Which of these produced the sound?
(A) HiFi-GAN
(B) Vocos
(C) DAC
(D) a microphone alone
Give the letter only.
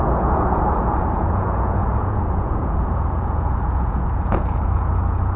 B